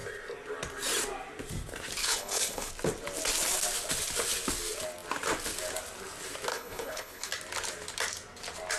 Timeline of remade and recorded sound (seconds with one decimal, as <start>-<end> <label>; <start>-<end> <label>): 0.0-2.0 recorded; 2.0-2.7 remade; 2.7-6.5 recorded; 6.5-7.3 remade; 7.3-8.8 recorded